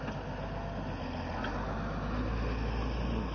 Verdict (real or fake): real